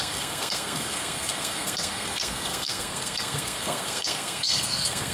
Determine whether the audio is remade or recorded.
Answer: remade